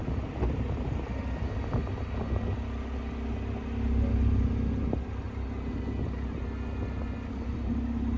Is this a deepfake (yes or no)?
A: no